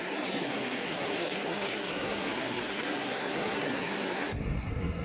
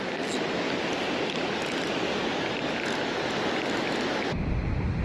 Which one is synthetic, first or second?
first